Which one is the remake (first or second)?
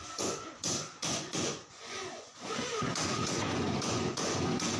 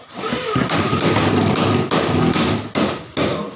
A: first